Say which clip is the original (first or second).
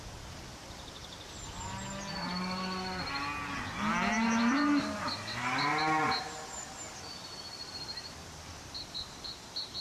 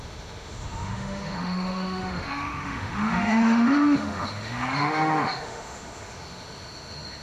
first